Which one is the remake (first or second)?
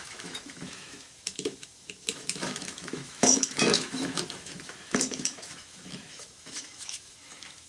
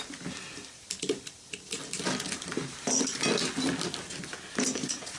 first